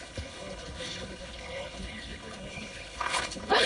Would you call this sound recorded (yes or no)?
no